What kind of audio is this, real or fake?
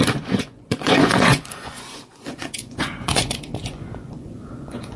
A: fake